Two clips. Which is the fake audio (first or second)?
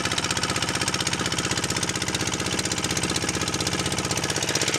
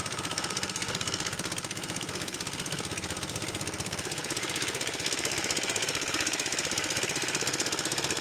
second